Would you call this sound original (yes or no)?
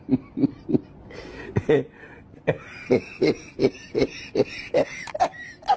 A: yes